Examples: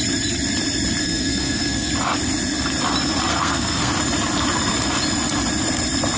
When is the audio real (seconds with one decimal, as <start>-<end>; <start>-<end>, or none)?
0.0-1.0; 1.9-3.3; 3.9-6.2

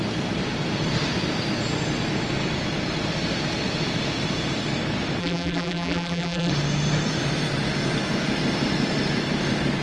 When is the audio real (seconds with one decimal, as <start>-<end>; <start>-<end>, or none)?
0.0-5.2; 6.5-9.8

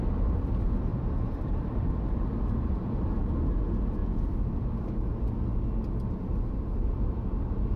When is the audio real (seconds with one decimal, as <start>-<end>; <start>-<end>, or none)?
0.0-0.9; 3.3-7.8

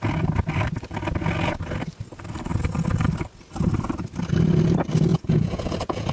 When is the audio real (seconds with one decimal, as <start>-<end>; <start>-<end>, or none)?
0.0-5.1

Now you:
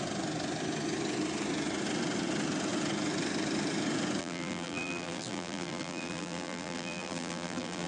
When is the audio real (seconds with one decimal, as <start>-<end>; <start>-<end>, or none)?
0.0-4.2